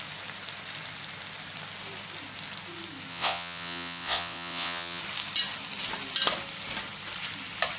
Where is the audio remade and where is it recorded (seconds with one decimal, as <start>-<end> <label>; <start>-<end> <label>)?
0.0-3.1 recorded; 3.1-5.0 remade; 5.0-7.8 recorded